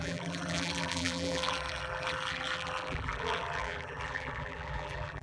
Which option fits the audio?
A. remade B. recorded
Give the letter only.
A